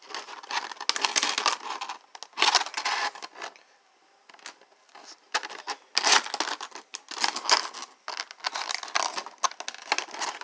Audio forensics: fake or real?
real